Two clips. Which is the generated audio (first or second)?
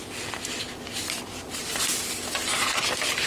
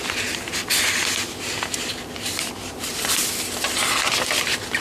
second